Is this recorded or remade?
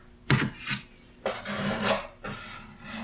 recorded